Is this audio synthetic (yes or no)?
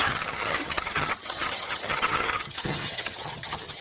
yes